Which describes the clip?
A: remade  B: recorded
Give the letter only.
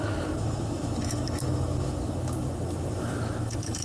A